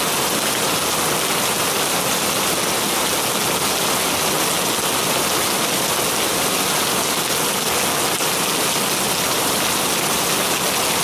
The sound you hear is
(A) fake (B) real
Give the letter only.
B